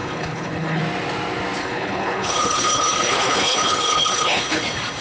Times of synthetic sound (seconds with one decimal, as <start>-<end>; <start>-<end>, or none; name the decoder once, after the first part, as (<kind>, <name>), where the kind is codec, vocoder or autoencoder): 0.0-0.8 (codec, HILCodec); 1.6-4.6